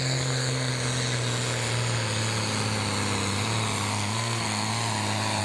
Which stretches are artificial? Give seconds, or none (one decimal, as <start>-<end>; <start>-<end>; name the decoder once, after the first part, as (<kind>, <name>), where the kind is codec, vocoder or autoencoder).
0.0-0.7 (codec, SNAC); 3.9-4.7